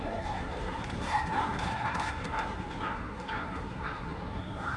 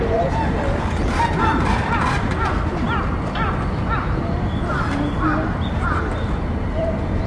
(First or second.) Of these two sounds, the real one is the second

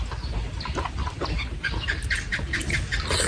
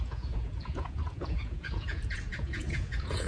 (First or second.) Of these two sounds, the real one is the first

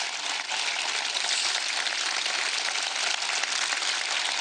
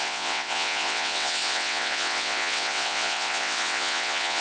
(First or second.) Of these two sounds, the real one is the first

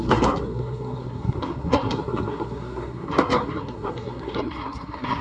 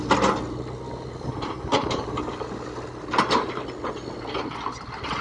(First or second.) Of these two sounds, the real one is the second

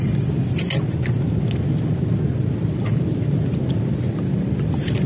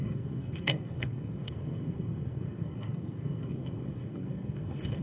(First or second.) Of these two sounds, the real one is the first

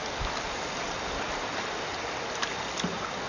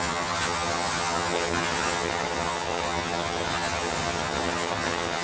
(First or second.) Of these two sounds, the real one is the first